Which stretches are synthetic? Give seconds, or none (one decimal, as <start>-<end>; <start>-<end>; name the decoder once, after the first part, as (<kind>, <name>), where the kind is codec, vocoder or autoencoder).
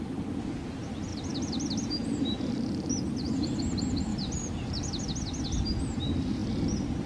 1.1-3.6 (vocoder, BigVGAN v2); 4.1-5.0